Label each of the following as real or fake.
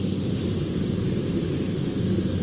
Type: real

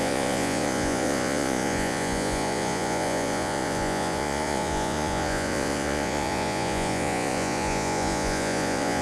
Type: fake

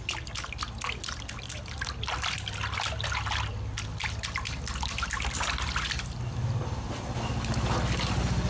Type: real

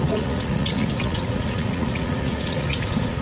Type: fake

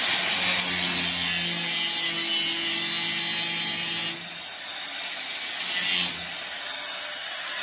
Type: real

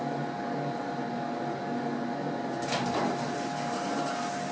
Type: real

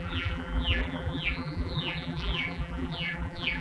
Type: fake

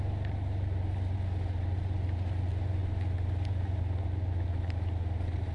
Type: real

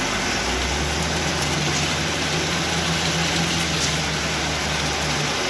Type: real